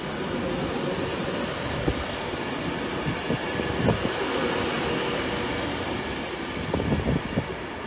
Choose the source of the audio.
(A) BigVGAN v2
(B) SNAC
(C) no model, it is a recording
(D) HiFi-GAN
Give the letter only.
C